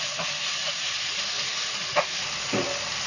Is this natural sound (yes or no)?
yes